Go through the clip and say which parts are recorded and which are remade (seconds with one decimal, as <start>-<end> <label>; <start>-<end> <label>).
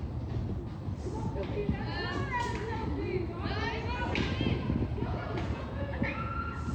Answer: 0.0-4.9 recorded; 4.9-6.3 remade; 6.3-6.7 recorded